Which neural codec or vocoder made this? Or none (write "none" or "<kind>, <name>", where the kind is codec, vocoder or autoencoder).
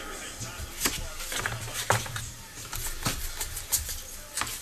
none